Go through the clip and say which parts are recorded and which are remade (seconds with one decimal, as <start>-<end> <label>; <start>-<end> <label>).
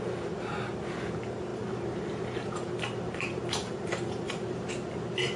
0.0-1.5 recorded; 1.5-4.7 remade; 4.7-5.4 recorded